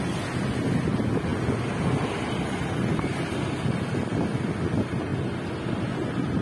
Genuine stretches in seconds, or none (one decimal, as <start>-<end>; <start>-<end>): 0.0-6.4